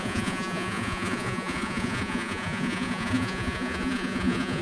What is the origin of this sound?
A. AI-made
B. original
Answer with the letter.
A